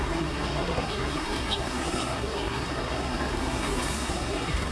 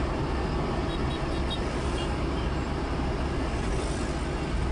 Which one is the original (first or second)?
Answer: second